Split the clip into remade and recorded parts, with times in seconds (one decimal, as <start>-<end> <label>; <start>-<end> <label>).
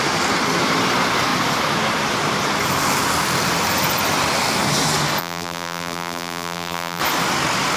0.0-5.2 recorded; 5.2-7.0 remade; 7.0-7.8 recorded